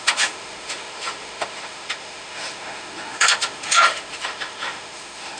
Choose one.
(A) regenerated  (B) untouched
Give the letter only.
A